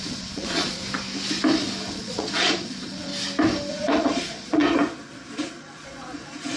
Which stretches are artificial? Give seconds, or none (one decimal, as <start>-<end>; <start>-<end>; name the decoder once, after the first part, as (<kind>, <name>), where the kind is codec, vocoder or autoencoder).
0.0-0.8 (vocoder, Vocos); 1.9-3.1; 3.7-4.6; 5.6-6.6